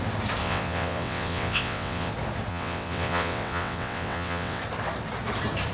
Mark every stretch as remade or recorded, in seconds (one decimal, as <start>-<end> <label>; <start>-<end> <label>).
0.0-0.4 recorded; 0.4-2.1 remade; 2.1-2.5 recorded; 2.5-4.6 remade; 4.6-5.7 recorded